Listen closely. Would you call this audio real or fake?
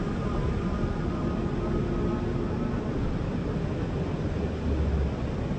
real